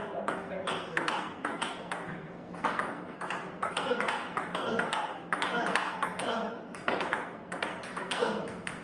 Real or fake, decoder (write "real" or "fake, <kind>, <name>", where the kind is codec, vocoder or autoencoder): fake, codec, SNAC